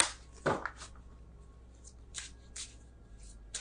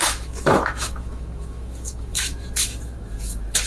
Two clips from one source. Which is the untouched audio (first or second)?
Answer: first